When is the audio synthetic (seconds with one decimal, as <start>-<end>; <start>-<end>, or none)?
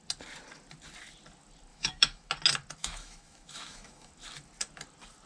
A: 1.7-2.3; 2.8-4.1